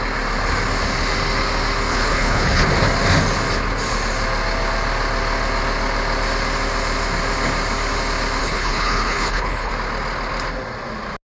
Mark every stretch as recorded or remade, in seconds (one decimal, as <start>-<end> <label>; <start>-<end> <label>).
0.0-1.9 recorded; 1.9-2.7 remade; 2.7-8.4 recorded; 8.4-9.7 remade; 9.7-11.4 recorded